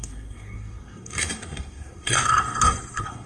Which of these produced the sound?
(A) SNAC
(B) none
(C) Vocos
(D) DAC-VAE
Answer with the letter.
A